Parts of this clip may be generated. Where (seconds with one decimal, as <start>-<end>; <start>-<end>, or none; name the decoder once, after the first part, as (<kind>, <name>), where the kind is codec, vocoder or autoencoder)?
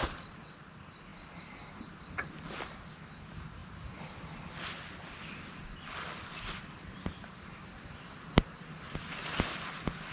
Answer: 1.1-2.1 (vocoder, BigVGAN v2)